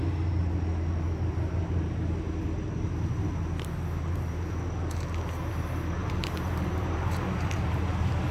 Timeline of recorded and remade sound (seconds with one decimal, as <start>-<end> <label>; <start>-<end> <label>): 0.0-6.0 recorded; 6.0-7.8 remade; 7.8-8.3 recorded